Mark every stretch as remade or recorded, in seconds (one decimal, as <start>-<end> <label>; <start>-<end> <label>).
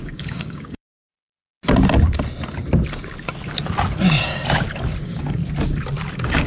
0.0-1.1 remade; 1.1-5.0 recorded; 5.0-5.4 remade; 5.4-6.1 recorded; 6.1-6.5 remade